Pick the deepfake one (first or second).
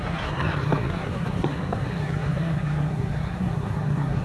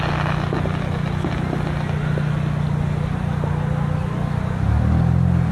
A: first